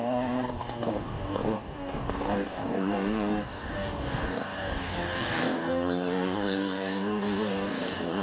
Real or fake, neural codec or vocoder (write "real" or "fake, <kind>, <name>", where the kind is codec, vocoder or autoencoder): fake, codec, DAC